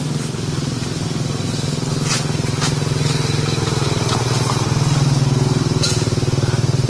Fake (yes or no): no